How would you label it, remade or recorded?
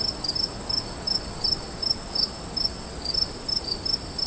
recorded